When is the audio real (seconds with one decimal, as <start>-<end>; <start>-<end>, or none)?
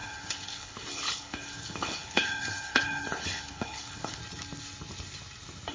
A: 4.2-5.7